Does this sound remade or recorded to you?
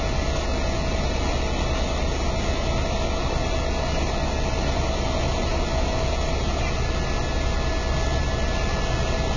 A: recorded